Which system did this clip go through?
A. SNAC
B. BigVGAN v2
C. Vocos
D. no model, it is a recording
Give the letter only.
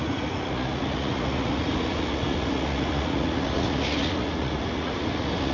C